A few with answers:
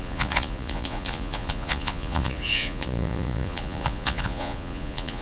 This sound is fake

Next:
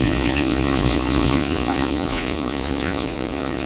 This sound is fake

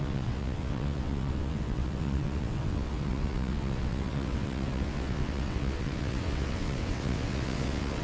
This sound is fake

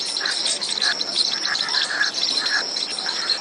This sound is real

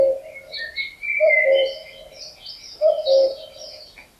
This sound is real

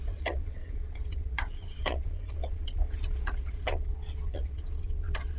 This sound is fake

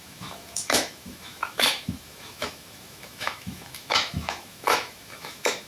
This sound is fake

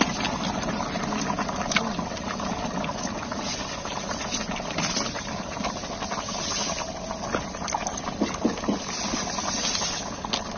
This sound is real